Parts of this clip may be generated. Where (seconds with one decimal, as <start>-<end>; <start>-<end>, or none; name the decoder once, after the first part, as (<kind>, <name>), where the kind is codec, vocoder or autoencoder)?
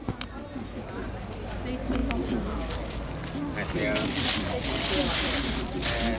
2.0-5.7 (vocoder, BigVGAN v2)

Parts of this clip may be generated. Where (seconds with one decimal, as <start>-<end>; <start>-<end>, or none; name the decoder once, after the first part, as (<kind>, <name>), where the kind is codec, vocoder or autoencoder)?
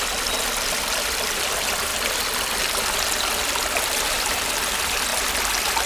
0.0-1.9 (vocoder, BigVGAN v2); 4.1-5.1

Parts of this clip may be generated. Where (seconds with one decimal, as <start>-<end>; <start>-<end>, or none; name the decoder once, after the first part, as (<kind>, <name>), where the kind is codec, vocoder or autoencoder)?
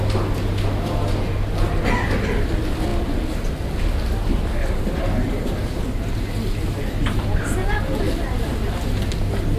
none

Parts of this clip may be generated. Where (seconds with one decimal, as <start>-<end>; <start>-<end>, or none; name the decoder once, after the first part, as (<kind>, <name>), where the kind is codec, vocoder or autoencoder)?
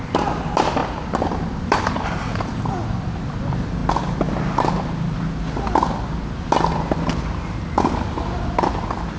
0.8-3.1 (vocoder, BigVGAN v2)